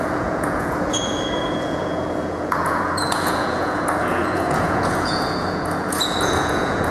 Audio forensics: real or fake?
fake